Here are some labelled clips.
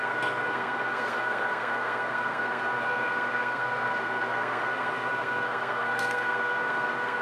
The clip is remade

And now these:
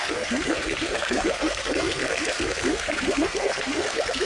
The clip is remade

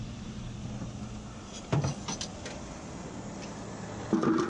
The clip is recorded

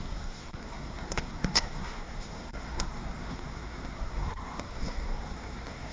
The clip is remade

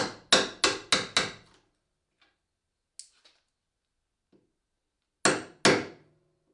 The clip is recorded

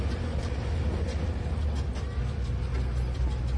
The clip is recorded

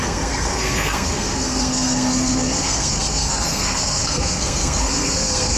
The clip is remade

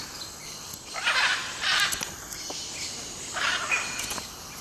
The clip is recorded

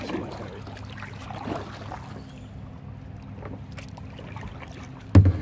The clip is recorded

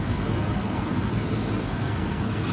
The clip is remade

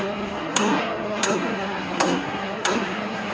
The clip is remade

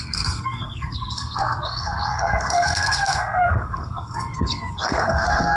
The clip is remade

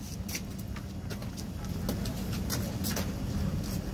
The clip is recorded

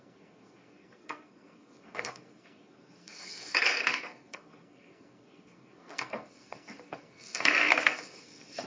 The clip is remade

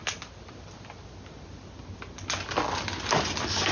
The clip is recorded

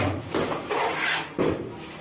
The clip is recorded